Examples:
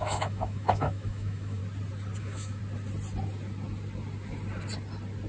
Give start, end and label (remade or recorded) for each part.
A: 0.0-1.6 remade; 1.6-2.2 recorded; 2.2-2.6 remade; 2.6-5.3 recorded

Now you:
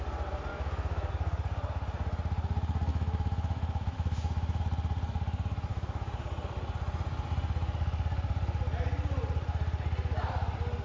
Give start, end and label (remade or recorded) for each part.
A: 0.0-0.5 recorded; 0.5-1.1 remade; 1.1-2.9 recorded; 2.9-4.6 remade; 4.6-5.7 recorded; 5.7-6.2 remade; 6.2-10.8 recorded

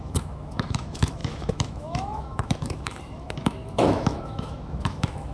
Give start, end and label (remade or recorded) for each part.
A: 0.0-5.3 remade

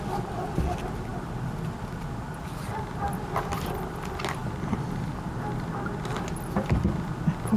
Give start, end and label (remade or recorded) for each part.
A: 0.0-7.6 recorded

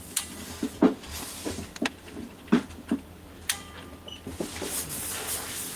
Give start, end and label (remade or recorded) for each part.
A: 0.0-5.8 recorded